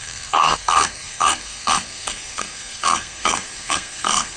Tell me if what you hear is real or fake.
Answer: fake